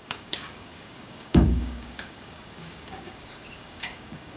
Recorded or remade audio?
remade